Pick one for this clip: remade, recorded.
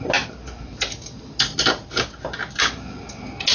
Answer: recorded